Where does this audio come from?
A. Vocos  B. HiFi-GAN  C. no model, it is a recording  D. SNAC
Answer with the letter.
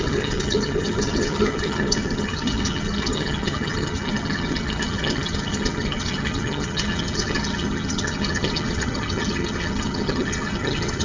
B